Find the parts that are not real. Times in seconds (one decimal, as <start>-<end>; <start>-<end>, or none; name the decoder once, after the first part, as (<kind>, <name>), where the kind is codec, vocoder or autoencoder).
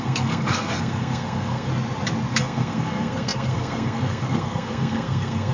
0.0-1.7 (codec, SNAC); 2.3-5.5